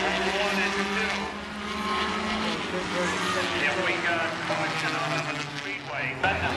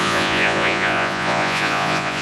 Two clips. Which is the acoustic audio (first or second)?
first